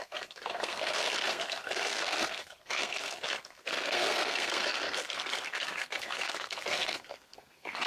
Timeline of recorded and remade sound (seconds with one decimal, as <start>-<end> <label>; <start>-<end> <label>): 0.0-7.9 remade